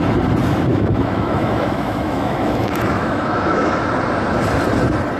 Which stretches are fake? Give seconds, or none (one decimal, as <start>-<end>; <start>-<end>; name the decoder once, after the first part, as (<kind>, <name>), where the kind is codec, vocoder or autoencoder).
0.7-3.8 (autoencoder, DAC-VAE)